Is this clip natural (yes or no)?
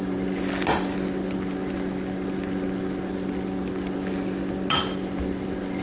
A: yes